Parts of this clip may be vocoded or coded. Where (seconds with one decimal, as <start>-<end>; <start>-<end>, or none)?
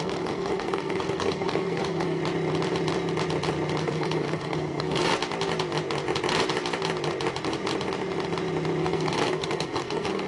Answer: 0.0-2.2; 3.8-5.1; 8.8-10.3